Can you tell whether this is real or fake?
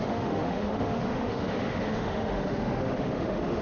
fake